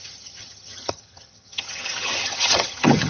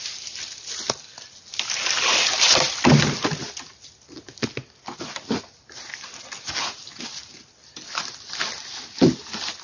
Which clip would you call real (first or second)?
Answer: second